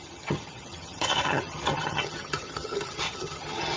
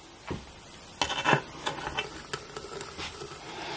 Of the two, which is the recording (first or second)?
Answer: second